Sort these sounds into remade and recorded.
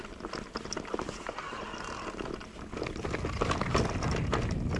recorded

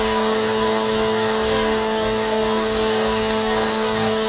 remade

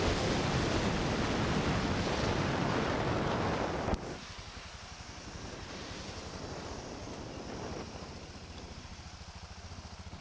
recorded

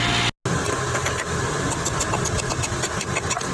recorded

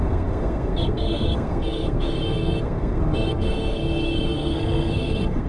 remade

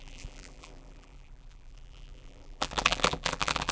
remade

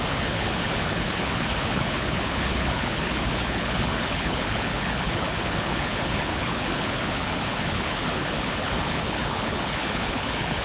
remade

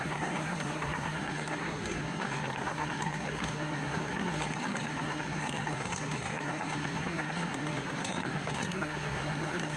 remade